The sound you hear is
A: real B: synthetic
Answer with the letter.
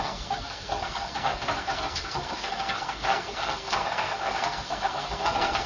B